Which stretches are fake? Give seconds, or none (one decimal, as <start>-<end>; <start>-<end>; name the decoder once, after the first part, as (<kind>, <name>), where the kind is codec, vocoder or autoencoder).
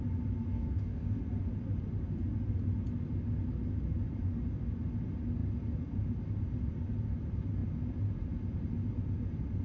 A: 0.5-1.2 (codec, DAC)